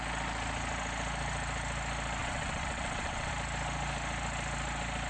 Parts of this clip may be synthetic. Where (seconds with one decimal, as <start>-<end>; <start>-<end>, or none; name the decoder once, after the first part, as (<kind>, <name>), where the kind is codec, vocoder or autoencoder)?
2.2-3.3 (vocoder, WaveNeXt)